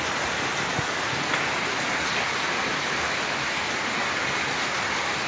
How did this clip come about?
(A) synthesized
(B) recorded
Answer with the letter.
B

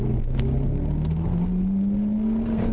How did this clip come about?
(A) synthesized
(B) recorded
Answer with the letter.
A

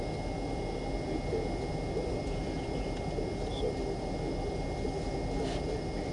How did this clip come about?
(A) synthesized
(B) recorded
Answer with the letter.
B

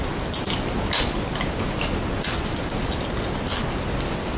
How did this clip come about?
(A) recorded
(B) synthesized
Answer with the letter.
A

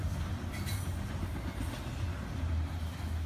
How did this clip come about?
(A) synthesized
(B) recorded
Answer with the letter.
B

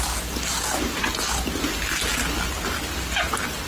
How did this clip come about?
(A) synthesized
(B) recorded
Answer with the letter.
B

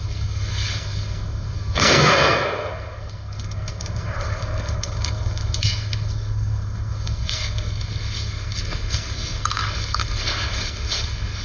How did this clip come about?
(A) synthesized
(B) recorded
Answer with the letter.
A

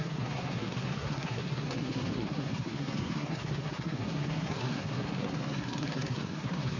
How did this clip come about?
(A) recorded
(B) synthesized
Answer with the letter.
B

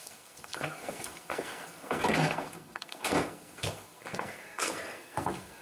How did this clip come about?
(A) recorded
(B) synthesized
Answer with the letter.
B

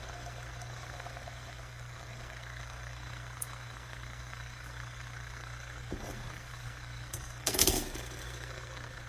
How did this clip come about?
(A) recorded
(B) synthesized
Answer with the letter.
B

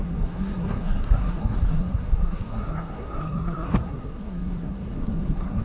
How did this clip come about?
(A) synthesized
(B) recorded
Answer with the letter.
A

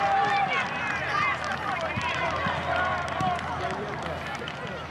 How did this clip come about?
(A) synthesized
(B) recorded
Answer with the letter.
B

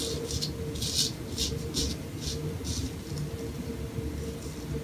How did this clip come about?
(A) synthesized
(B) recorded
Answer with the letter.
B